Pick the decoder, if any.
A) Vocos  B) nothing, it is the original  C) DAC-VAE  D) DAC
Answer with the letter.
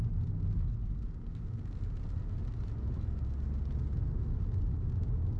B